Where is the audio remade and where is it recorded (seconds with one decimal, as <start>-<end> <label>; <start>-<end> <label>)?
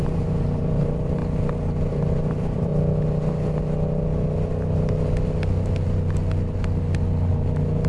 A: 0.0-1.2 remade; 1.2-1.9 recorded; 1.9-2.7 remade; 2.7-7.3 recorded; 7.3-7.9 remade